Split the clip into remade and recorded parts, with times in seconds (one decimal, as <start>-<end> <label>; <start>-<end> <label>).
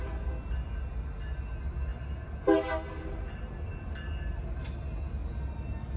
0.0-6.0 recorded